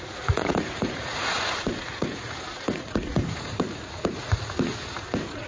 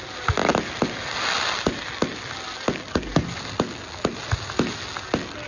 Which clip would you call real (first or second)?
second